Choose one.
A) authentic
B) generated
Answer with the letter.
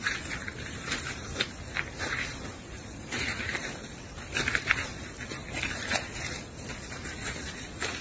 B